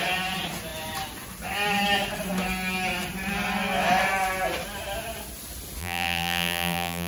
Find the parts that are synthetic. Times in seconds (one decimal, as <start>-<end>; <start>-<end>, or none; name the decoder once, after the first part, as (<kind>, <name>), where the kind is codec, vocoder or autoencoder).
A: 5.8-7.1 (vocoder, BigVGAN v2)